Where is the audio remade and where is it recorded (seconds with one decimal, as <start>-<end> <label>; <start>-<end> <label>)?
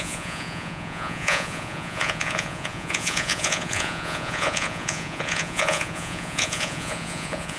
0.0-7.6 remade